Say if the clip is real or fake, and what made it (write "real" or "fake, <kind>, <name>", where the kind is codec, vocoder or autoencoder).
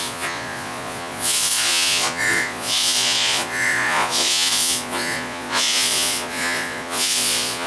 fake, vocoder, Vocos